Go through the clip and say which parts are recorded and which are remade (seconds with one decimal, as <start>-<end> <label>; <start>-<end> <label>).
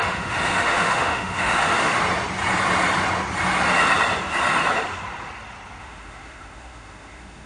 0.0-2.0 remade; 2.0-5.8 recorded; 5.8-7.5 remade